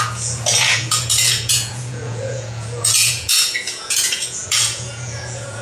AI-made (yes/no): yes